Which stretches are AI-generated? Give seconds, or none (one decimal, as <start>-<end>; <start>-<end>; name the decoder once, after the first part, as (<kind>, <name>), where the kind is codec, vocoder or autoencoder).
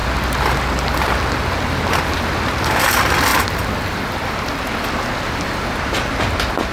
none